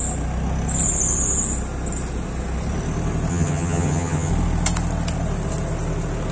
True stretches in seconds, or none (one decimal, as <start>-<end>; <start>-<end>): 0.0-3.3; 4.3-6.3